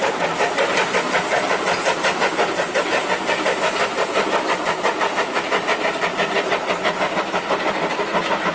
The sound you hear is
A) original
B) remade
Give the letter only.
A